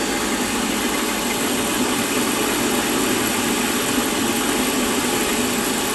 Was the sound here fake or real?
real